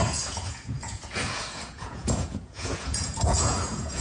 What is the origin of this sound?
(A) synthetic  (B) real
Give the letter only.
A